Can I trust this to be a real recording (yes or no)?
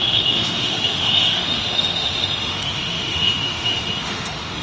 no